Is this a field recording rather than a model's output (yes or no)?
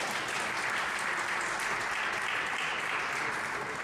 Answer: yes